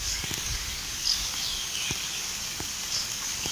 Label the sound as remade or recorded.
remade